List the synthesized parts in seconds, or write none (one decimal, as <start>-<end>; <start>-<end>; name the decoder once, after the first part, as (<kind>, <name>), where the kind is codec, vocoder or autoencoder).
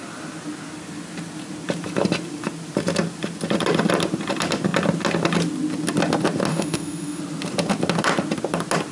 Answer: 6.5-7.2 (autoencoder, DAC-VAE)